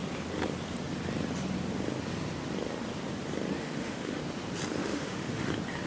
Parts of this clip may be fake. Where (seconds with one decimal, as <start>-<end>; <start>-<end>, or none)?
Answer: 3.6-4.2; 4.8-5.5

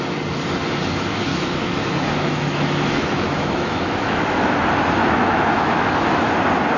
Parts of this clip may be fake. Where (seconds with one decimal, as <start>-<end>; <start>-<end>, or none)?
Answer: 1.3-4.6; 5.0-6.3

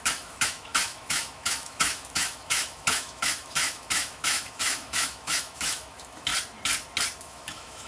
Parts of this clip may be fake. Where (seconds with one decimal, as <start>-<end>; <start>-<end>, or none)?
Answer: 0.0-6.3; 7.2-7.9

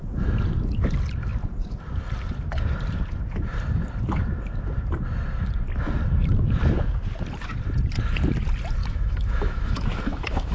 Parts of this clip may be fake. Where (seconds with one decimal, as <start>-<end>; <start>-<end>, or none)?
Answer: 8.8-10.5

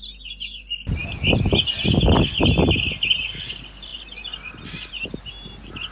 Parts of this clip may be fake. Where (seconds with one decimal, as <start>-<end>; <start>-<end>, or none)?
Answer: none

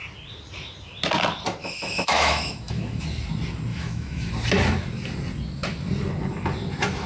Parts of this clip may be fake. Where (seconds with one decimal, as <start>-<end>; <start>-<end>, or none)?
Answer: 1.6-3.0; 3.7-4.3

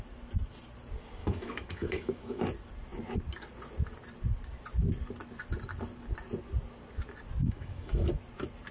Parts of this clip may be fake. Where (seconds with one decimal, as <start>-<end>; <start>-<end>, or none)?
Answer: 1.2-2.4; 7.4-8.1

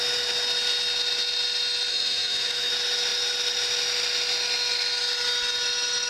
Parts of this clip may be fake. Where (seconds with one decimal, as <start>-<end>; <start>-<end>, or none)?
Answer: 1.9-2.7